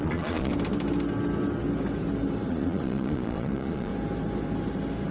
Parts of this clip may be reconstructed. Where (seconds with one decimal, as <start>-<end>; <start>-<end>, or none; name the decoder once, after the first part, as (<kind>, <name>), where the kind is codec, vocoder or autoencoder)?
0.0-0.5 (vocoder, Vocos); 2.5-3.9